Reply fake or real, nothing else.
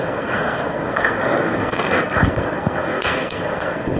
fake